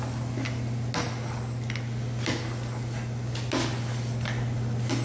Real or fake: real